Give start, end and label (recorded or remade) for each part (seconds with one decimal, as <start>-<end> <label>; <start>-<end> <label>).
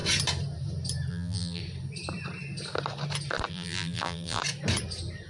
0.0-1.1 recorded; 1.1-1.6 remade; 1.6-3.5 recorded; 3.5-4.4 remade; 4.4-5.3 recorded